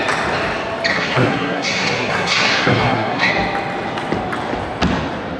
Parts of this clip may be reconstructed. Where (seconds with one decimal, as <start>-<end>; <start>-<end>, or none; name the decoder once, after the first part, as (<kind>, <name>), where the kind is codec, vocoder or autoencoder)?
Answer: 0.9-3.3 (codec, SNAC)